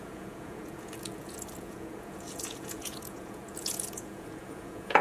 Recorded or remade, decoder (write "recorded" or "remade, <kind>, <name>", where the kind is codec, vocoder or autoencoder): remade, vocoder, Vocos